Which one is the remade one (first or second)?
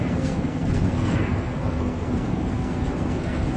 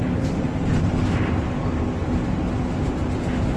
first